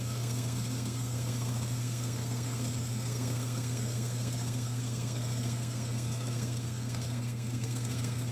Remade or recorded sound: remade